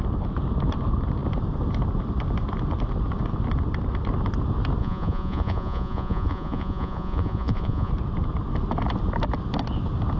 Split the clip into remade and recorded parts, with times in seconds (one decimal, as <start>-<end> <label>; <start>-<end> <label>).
0.0-4.8 recorded; 4.8-7.9 remade; 7.9-10.2 recorded